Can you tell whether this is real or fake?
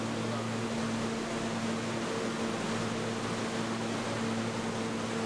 real